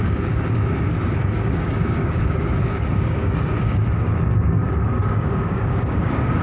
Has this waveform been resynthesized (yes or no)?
yes